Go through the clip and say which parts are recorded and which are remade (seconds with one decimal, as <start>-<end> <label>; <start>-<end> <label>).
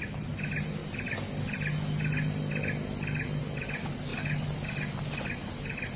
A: 0.0-6.0 recorded